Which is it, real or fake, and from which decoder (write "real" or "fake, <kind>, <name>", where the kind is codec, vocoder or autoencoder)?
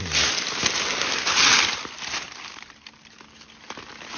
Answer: real